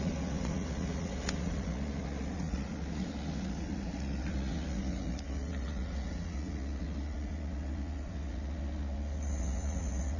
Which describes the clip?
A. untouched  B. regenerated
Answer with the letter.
B